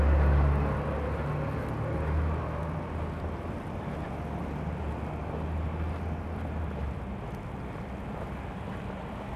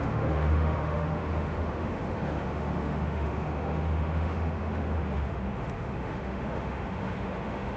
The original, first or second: first